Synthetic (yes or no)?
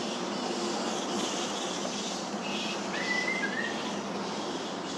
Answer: no